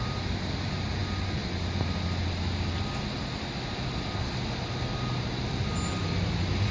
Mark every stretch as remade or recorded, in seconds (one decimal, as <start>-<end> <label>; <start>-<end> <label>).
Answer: 0.0-6.7 recorded